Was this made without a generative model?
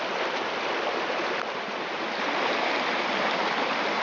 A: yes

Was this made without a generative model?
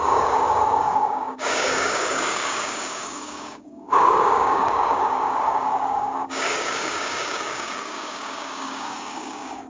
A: no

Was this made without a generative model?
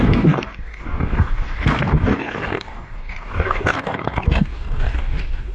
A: no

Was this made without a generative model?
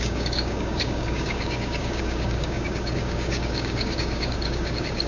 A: no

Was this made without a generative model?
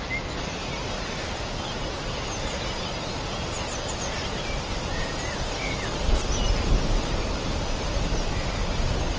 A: yes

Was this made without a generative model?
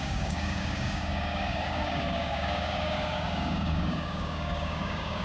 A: no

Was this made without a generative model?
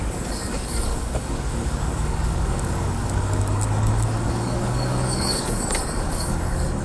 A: no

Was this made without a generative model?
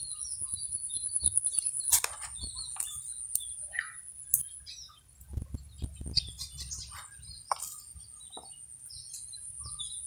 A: yes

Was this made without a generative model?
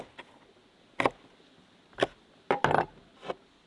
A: yes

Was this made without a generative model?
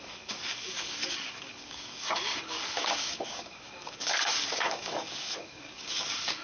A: no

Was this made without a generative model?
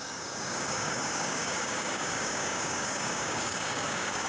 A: no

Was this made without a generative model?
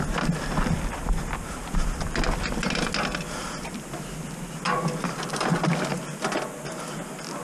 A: yes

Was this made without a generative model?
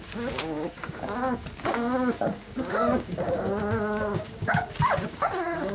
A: no